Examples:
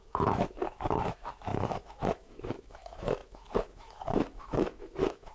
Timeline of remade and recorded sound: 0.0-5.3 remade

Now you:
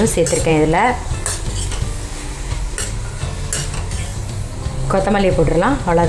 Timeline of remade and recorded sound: 0.0-6.1 recorded